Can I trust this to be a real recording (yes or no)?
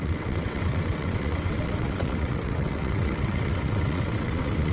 no